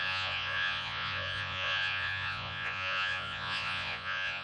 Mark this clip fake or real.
fake